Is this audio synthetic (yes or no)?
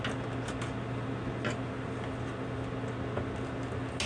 no